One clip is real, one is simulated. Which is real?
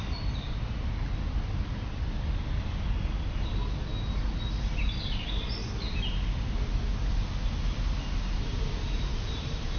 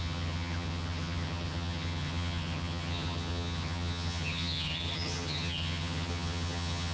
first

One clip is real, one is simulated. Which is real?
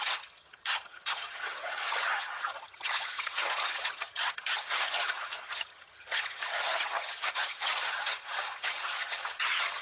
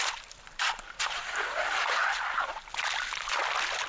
second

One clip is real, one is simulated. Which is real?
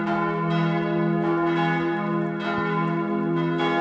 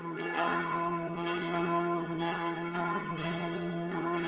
first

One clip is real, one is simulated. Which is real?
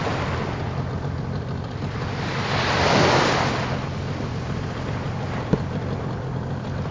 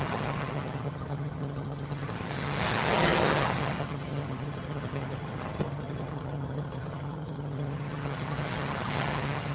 first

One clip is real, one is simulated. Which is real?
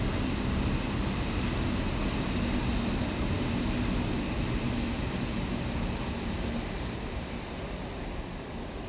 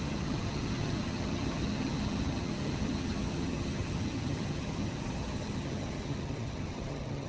first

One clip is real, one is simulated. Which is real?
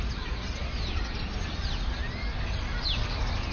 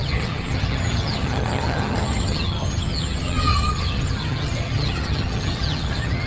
first